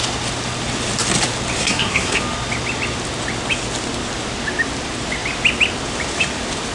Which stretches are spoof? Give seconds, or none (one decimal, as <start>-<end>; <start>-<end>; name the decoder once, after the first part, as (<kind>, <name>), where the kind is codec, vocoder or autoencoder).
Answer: 1.6-2.2 (codec, SNAC)